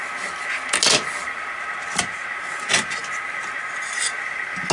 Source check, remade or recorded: recorded